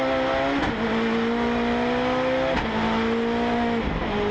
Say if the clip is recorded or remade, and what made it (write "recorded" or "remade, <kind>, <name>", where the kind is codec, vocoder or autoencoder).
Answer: recorded